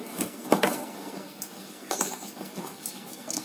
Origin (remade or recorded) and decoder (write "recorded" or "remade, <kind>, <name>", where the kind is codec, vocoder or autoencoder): remade, codec, SNAC